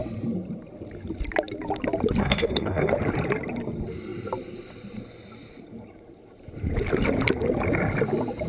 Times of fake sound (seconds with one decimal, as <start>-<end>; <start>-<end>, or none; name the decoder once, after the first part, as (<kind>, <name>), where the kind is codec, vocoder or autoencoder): 2.2-2.9 (codec, SNAC)